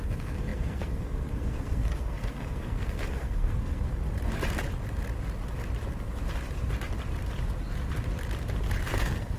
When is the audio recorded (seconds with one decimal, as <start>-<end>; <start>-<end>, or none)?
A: 4.0-8.9